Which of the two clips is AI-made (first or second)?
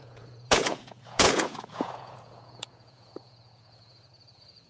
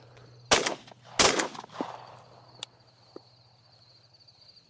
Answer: first